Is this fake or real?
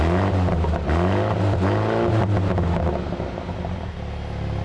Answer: real